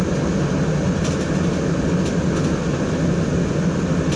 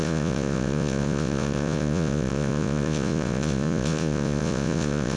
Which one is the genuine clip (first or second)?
first